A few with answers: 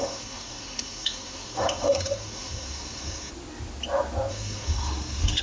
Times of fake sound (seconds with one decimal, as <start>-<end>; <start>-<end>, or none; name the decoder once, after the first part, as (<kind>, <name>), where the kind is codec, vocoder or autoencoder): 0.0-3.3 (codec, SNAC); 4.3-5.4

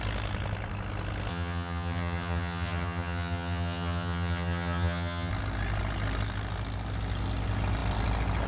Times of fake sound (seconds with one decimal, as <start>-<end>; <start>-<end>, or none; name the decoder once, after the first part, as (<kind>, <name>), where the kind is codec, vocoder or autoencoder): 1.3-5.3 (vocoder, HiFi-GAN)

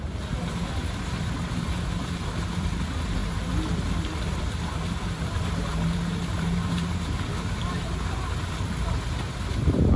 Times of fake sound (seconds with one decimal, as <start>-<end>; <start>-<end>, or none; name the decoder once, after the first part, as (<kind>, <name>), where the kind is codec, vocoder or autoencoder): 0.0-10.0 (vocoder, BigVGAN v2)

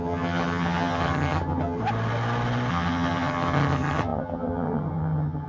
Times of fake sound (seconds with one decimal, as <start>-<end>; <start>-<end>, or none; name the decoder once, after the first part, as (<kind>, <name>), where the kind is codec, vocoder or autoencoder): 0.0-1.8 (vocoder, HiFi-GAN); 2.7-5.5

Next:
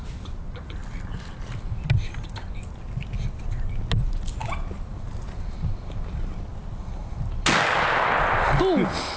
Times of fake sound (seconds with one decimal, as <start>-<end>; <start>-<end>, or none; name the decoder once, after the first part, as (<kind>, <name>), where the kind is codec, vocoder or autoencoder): none

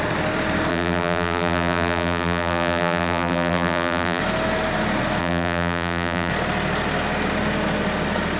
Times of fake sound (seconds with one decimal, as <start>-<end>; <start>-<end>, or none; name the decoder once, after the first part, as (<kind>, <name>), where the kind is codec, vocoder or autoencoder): 0.7-4.2 (vocoder, BigVGAN v2); 5.2-6.3

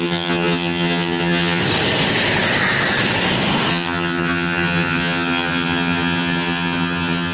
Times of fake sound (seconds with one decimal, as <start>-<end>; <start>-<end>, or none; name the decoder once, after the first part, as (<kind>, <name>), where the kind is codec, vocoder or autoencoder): 0.0-1.6 (vocoder, HiFi-GAN); 3.7-7.3

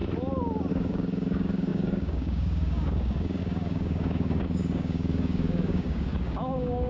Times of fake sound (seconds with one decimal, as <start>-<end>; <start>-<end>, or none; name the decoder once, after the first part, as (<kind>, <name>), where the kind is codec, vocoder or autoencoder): 0.7-6.9 (codec, DAC)